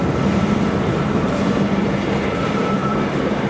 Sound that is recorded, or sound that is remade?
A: remade